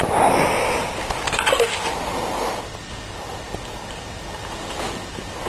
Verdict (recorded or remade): recorded